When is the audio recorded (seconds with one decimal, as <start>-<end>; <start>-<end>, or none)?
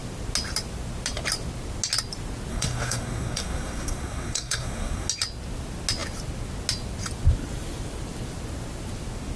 0.0-2.5; 5.1-9.4